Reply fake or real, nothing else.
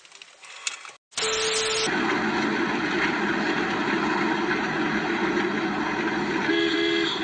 real